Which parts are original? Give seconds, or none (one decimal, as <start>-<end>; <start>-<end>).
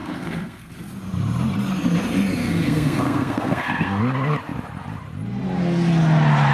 0.7-2.4; 4.0-6.5